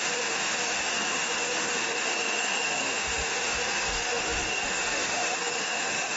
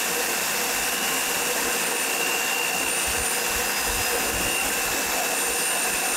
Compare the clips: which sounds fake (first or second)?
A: first